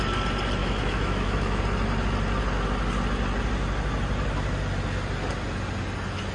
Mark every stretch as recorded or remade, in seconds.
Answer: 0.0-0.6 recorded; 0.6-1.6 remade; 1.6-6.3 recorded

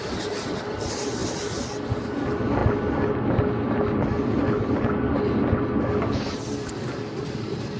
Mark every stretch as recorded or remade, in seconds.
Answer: 0.0-7.8 recorded

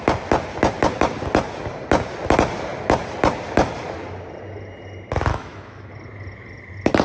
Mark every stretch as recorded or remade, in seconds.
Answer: 0.0-5.3 recorded; 5.3-5.9 remade; 5.9-7.0 recorded

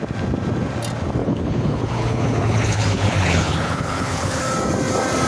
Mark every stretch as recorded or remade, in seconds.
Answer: 0.0-1.2 recorded; 1.2-4.4 remade; 4.4-5.3 recorded

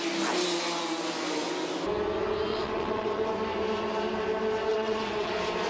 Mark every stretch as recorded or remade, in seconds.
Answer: 0.0-2.5 recorded; 2.5-3.3 remade; 3.3-4.7 recorded; 4.7-5.3 remade; 5.3-5.7 recorded